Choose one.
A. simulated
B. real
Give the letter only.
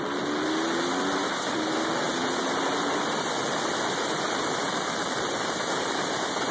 B